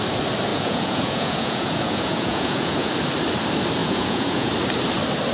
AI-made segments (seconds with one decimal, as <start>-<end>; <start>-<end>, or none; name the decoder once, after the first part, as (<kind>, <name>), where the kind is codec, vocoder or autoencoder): 0.5-2.9 (vocoder, Vocos); 3.8-4.5

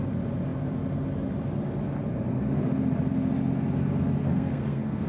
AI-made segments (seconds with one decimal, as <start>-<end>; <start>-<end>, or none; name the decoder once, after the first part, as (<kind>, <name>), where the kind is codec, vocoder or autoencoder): 4.2-5.1 (codec, SNAC)

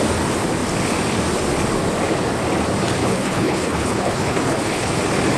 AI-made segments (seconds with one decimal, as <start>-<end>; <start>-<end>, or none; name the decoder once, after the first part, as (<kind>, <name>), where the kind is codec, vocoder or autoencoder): 3.0-4.9 (codec, HILCodec)

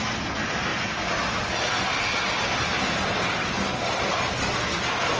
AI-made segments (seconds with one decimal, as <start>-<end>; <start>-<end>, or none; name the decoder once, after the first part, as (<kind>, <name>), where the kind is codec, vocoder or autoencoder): none

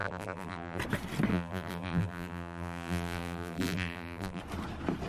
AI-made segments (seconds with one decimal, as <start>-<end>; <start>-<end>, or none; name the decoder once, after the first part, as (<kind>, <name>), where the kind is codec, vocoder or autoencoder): 0.0-0.8 (vocoder, BigVGAN v2); 1.3-4.4